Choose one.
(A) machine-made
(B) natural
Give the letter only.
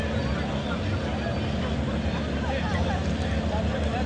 B